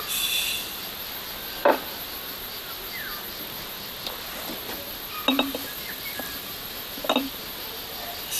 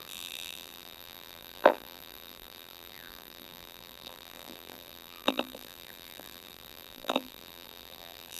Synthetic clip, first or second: second